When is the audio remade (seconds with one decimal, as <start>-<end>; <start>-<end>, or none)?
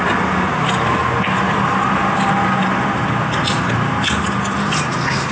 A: none